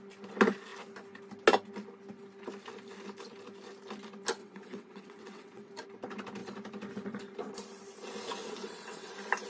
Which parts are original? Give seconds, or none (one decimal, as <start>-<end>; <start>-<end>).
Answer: 0.0-4.4; 5.7-8.4; 9.1-9.5